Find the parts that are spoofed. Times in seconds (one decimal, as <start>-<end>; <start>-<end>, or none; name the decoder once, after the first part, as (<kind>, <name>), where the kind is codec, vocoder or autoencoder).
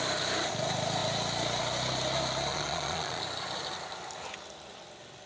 2.5-3.2 (vocoder, Vocos)